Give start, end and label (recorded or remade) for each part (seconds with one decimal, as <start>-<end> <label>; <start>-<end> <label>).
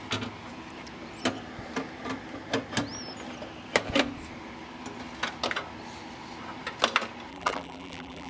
0.0-7.3 recorded; 7.3-8.3 remade